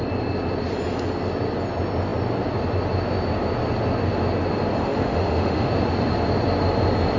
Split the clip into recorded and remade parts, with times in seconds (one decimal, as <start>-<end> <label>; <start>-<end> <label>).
0.0-4.8 recorded; 4.8-5.7 remade; 5.7-7.2 recorded